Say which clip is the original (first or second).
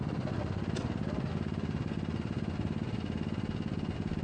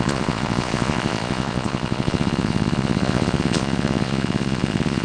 first